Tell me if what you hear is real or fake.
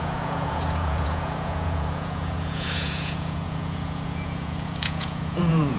fake